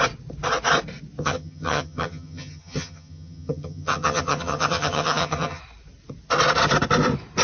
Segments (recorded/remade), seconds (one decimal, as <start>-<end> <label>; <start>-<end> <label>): 0.0-1.2 recorded; 1.2-5.6 remade; 5.6-7.4 recorded